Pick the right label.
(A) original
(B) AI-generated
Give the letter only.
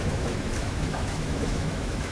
B